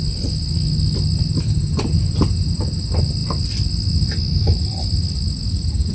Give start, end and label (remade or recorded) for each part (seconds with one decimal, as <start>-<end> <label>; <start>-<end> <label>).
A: 0.0-5.9 recorded